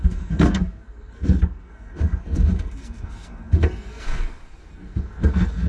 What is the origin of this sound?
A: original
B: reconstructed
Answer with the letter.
B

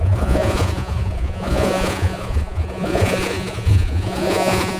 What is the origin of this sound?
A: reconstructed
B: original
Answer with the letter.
A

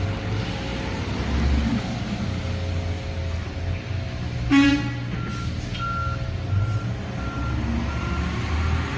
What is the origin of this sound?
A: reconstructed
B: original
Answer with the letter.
B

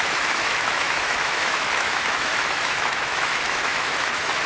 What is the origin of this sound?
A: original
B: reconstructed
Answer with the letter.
B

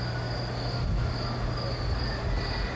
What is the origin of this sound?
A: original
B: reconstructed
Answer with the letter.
A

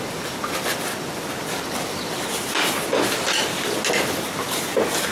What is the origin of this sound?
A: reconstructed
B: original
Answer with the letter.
B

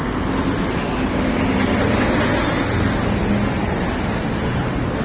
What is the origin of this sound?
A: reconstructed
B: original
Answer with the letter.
B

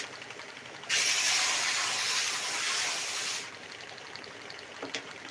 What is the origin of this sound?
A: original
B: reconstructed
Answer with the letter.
A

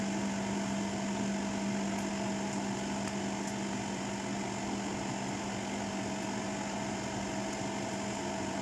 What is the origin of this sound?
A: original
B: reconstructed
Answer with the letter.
A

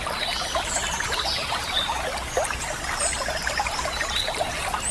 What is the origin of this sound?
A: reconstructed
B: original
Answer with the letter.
B